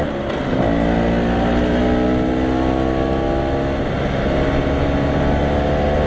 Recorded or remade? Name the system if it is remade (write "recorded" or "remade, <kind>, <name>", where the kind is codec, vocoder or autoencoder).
recorded